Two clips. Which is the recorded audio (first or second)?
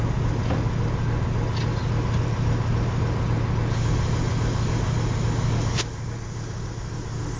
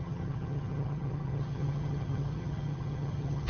first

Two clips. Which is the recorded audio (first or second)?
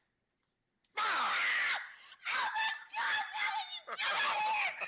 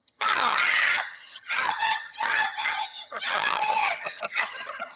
first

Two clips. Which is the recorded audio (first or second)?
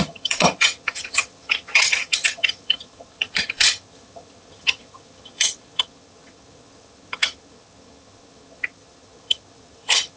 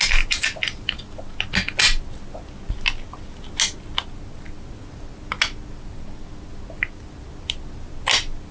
second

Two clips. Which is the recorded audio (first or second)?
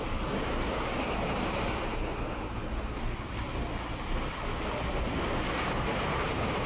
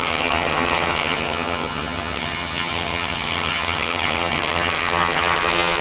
first